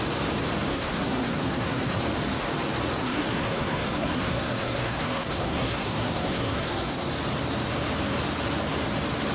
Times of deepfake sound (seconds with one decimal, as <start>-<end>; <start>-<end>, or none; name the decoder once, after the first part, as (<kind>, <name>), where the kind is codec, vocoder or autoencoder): 0.7-2.0 (codec, SNAC); 3.0-7.1